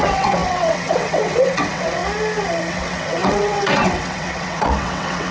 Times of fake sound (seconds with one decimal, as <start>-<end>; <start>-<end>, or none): 0.0-2.0; 2.7-5.3